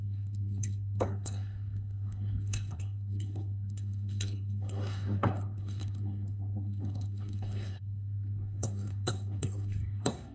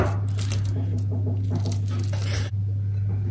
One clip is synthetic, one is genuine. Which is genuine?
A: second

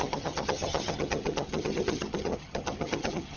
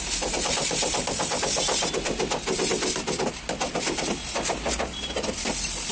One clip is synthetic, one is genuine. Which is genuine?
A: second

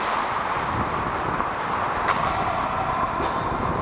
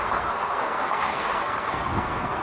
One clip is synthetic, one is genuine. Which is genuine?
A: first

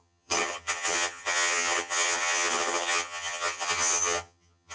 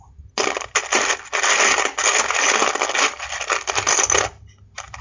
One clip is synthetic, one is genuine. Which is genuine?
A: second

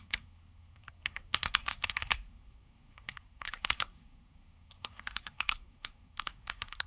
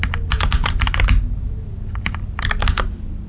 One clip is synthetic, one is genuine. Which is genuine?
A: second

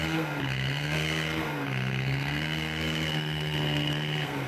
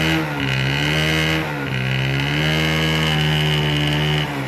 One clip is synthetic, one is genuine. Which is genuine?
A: second